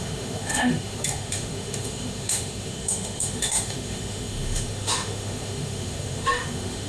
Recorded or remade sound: remade